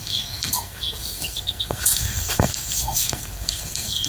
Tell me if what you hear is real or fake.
fake